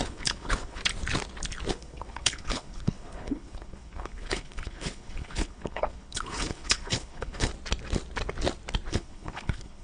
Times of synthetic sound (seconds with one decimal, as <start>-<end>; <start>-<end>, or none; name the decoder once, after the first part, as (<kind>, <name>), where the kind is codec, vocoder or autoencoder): 0.0-0.8 (codec, HILCodec); 1.7-7.5; 8.9-9.8